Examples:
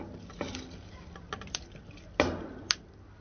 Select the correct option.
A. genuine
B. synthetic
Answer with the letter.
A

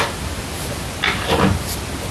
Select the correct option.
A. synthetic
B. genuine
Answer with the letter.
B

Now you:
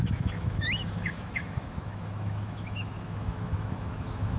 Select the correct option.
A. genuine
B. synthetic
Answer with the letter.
B